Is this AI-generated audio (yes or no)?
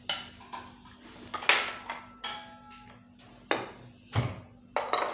no